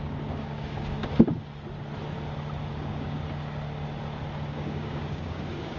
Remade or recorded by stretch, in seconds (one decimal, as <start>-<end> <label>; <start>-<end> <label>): 0.0-1.0 remade; 1.0-2.7 recorded; 2.7-3.2 remade; 3.2-4.5 recorded; 4.5-5.8 remade

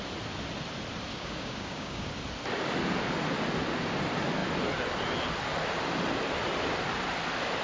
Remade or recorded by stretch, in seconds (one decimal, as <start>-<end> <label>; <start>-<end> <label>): 0.0-1.1 recorded; 1.1-2.1 remade; 2.1-7.6 recorded